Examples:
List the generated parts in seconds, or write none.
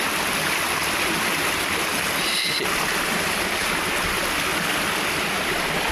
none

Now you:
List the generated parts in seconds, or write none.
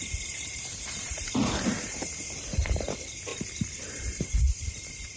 0.0-3.3 (vocoder, BigVGAN v2); 3.9-5.2